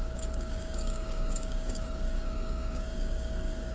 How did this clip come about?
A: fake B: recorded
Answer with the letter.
A